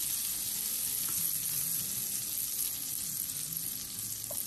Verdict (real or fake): real